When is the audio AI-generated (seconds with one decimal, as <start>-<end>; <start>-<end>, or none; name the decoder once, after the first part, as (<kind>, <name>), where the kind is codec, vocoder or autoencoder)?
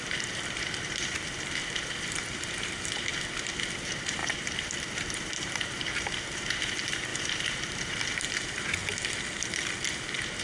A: 0.0-8.8 (vocoder, BigVGAN v2)